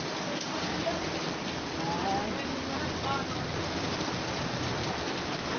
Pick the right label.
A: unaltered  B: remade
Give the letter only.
A